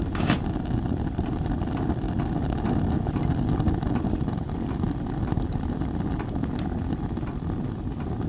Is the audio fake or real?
real